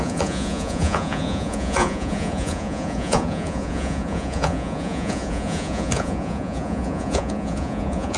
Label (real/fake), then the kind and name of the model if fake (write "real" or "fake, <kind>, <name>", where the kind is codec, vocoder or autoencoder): fake, vocoder, Vocos